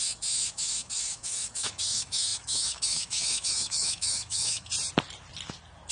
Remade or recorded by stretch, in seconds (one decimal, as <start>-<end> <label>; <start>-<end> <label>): 0.0-4.7 remade; 4.7-5.9 recorded